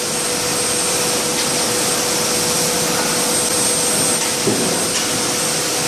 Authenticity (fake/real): real